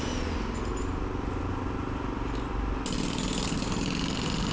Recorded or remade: recorded